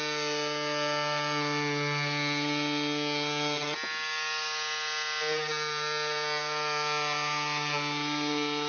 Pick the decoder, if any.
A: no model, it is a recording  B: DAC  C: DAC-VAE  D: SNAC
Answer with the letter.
A